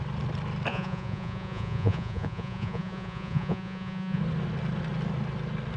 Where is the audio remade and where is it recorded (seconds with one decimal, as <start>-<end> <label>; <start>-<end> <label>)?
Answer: 0.0-0.7 recorded; 0.7-4.2 remade; 4.2-5.8 recorded